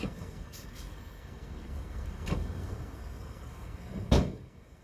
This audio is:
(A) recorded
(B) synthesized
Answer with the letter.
B